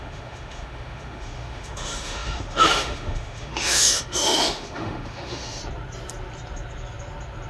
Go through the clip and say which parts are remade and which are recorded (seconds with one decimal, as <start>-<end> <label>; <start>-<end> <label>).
0.0-5.6 remade; 5.6-7.5 recorded